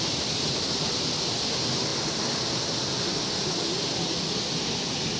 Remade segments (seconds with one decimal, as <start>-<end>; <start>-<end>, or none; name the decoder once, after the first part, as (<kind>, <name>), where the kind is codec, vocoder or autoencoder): none